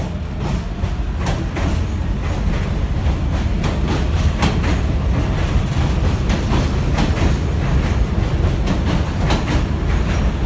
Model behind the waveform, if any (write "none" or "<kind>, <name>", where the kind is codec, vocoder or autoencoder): none